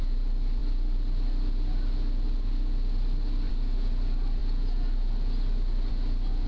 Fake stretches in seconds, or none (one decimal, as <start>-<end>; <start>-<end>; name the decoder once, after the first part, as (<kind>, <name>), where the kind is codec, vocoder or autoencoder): none

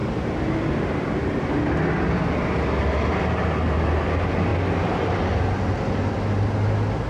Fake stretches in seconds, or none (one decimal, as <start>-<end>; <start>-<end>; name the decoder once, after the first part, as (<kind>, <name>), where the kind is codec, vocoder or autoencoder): none

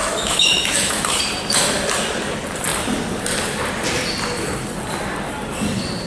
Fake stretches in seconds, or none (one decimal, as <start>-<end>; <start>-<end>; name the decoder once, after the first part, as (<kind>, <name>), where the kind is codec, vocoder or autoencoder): 0.0-1.2 (autoencoder, DAC-VAE)

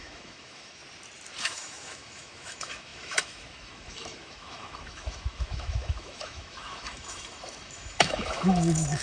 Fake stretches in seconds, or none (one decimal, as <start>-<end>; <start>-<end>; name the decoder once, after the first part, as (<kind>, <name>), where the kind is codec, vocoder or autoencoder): 0.0-0.8 (autoencoder, DAC-VAE); 1.4-9.0